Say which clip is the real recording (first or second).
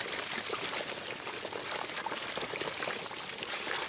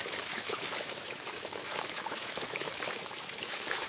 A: first